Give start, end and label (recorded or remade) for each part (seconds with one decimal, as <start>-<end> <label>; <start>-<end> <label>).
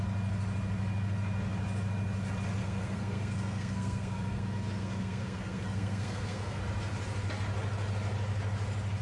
0.0-2.6 recorded; 2.6-6.6 remade; 6.6-9.0 recorded